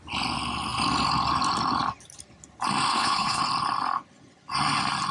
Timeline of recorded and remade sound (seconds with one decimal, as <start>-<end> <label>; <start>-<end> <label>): 0.0-2.9 recorded; 2.9-3.4 remade; 3.4-5.1 recorded